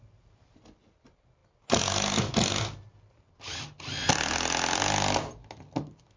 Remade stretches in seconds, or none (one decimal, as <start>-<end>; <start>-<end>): none